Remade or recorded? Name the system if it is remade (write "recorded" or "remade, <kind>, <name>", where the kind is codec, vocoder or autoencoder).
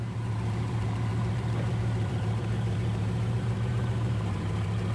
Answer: remade, vocoder, BigVGAN v2